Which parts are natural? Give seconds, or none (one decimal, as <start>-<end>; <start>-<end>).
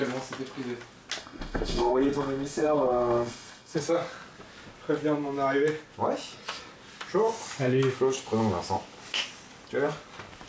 0.0-1.2; 3.8-10.5